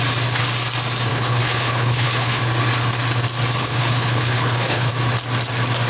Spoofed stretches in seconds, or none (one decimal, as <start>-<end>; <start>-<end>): 1.1-2.4; 3.6-4.9